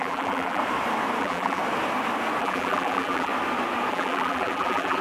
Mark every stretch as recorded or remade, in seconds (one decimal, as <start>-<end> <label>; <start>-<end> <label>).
0.0-0.6 remade; 0.6-1.2 recorded; 1.2-1.6 remade; 1.6-2.4 recorded; 2.4-3.3 remade; 3.3-3.9 recorded; 3.9-5.0 remade